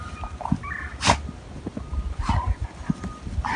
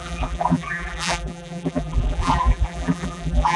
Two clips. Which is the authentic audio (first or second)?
first